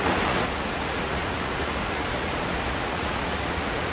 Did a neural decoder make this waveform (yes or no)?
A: yes